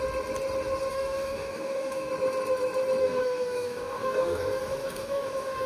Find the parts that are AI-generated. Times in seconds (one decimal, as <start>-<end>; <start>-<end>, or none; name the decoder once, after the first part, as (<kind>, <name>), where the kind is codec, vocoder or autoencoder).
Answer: 0.9-2.1 (codec, DAC); 3.0-5.7